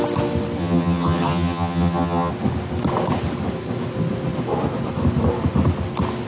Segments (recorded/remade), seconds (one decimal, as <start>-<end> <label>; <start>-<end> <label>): 0.0-0.6 recorded; 0.6-2.3 remade; 2.3-6.3 recorded